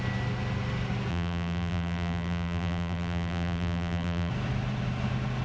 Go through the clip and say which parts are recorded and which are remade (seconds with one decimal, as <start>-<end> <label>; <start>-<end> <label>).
0.0-1.1 recorded; 1.1-4.3 remade; 4.3-5.4 recorded